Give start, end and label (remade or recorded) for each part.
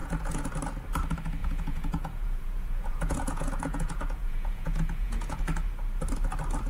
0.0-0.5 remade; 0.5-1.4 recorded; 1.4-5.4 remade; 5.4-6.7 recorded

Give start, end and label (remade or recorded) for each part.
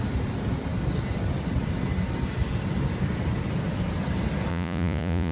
0.0-4.5 recorded; 4.5-5.3 remade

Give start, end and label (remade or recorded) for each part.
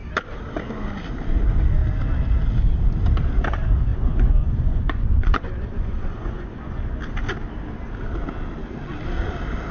0.0-3.9 recorded; 3.9-7.0 remade; 7.0-9.7 recorded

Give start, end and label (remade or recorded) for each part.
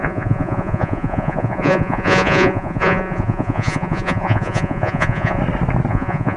0.0-5.4 remade; 5.4-5.9 recorded; 5.9-6.4 remade